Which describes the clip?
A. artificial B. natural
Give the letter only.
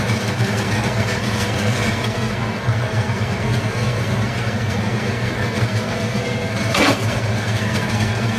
A